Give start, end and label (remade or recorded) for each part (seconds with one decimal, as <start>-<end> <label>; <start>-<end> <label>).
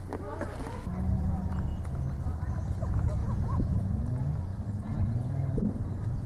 0.0-3.2 recorded; 3.2-4.0 remade; 4.0-6.3 recorded